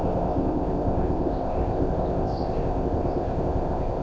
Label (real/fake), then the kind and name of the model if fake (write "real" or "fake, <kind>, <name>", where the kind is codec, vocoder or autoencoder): fake, codec, ZipCodec